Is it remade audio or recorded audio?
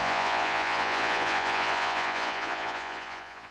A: remade